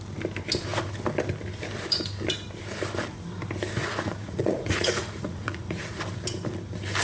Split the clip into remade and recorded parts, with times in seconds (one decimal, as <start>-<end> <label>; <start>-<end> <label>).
0.0-3.8 recorded; 3.8-6.0 remade; 6.0-7.0 recorded